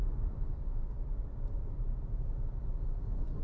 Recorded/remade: remade